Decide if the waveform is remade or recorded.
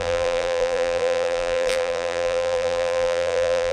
remade